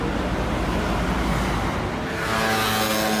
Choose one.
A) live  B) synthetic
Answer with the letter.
A